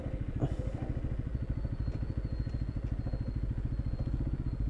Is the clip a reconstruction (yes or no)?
no